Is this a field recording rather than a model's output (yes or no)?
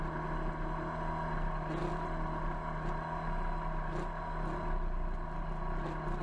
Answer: yes